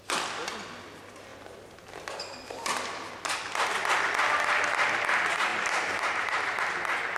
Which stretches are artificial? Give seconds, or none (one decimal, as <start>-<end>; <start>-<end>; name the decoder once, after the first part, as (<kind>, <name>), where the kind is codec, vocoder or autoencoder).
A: 1.3-2.2 (vocoder, BigVGAN v2); 5.5-6.6